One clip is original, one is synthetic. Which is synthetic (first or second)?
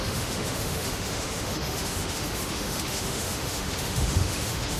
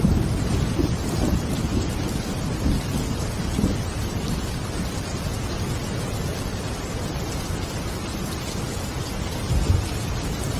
first